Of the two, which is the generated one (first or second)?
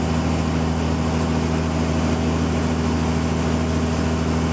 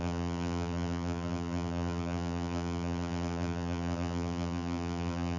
second